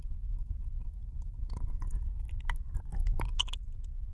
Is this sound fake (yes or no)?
no